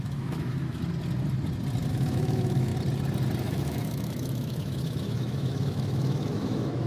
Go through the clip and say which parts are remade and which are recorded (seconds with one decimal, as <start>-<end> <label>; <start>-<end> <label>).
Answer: 0.0-0.8 remade; 0.8-1.9 recorded; 1.9-2.7 remade; 2.7-3.4 recorded; 3.4-6.9 remade